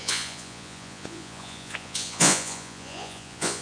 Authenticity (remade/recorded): remade